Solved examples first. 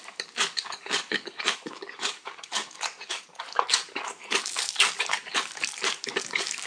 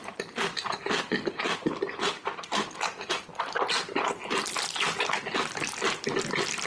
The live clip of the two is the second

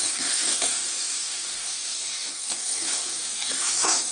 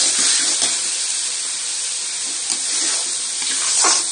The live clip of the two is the second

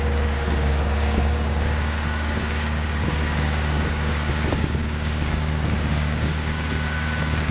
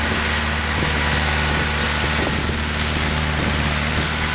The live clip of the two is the second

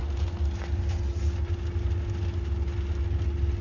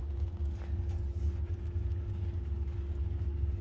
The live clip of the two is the first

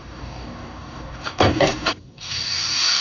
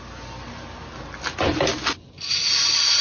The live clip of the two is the second